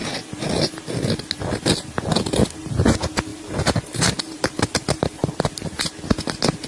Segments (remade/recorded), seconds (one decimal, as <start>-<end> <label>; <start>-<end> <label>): 0.0-3.3 recorded; 3.3-5.3 remade; 5.3-6.7 recorded